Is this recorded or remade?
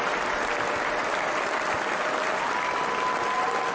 recorded